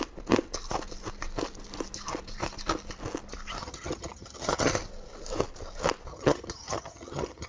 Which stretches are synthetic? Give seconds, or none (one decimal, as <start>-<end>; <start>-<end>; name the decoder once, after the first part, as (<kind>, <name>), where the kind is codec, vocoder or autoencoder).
3.6-4.7 (vocoder, HiFi-GAN); 6.1-7.5